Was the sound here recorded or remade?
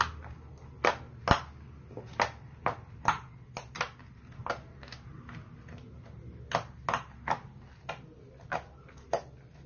recorded